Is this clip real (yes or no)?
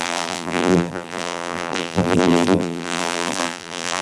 no